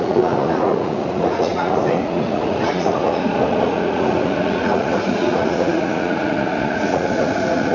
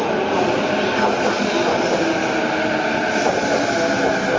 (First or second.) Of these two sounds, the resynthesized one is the first